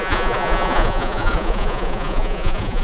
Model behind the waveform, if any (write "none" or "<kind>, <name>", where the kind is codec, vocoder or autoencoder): vocoder, Vocos